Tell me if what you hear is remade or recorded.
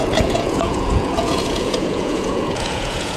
remade